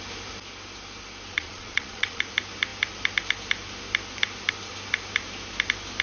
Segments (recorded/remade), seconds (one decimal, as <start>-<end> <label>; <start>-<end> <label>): 0.0-1.3 recorded; 1.3-2.2 remade; 2.2-6.0 recorded